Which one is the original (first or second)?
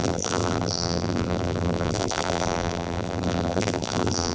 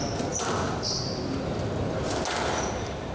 second